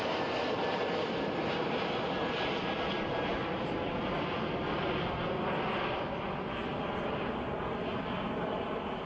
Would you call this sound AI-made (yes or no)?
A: no